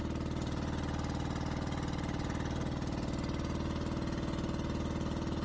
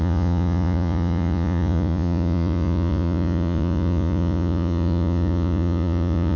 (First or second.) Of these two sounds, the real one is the first